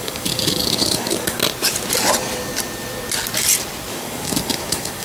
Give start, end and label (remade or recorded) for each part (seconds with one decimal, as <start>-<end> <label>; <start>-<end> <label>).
0.0-1.4 remade; 1.4-3.9 recorded; 3.9-5.0 remade